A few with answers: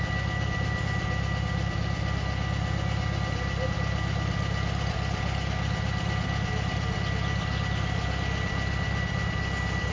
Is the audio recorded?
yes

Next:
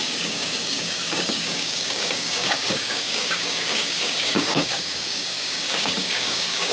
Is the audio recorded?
no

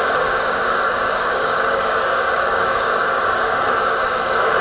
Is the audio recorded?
no